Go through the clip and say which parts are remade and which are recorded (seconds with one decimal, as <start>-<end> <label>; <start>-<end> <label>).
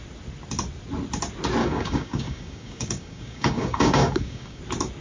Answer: 0.0-1.6 recorded; 1.6-4.6 remade; 4.6-5.0 recorded